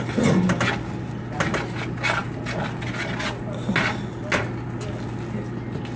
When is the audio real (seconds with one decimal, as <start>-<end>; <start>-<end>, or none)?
0.0-6.0